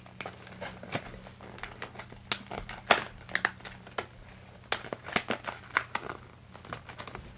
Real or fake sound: real